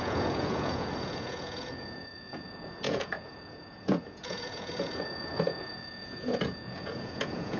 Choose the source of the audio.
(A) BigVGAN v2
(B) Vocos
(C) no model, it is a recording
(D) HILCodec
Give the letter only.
B